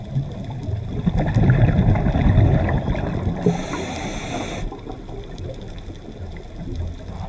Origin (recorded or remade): recorded